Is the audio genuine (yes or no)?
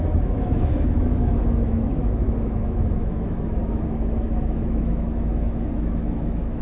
no